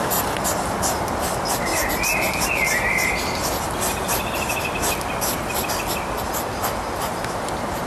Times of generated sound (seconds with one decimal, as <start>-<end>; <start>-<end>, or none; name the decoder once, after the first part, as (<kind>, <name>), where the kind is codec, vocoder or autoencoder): none

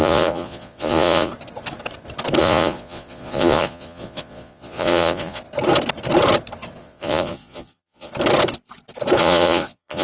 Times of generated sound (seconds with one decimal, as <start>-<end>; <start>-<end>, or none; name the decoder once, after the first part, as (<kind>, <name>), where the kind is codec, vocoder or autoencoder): 0.0-1.3 (vocoder, Vocos); 2.4-5.4; 6.8-8.1; 9.2-10.0

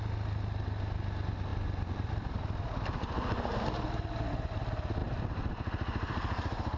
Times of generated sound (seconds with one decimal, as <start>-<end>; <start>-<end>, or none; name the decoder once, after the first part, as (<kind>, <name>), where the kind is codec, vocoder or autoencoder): 1.5-4.3 (vocoder, BigVGAN v2); 5.0-6.8

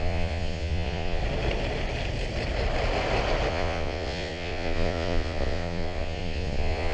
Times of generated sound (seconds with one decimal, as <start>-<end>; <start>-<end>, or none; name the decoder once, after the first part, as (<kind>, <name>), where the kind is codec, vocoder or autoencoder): 0.0-1.2 (vocoder, Vocos); 3.5-6.9

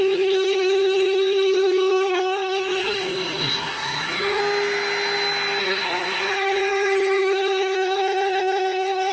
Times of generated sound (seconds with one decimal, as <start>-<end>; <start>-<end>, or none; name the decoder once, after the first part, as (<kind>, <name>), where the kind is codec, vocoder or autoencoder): 0.0-4.4 (codec, SNAC); 5.6-9.1